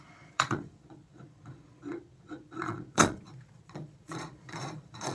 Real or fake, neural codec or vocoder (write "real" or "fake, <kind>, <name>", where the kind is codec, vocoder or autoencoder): fake, vocoder, Vocos